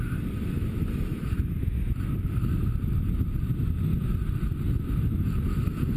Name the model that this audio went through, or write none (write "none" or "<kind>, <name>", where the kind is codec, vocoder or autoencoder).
vocoder, BigVGAN v2